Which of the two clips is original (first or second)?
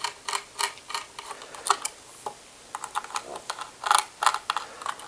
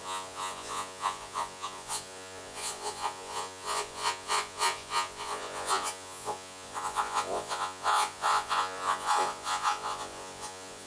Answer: first